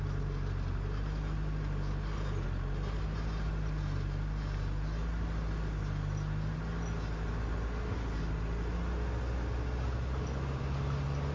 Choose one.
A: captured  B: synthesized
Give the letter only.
A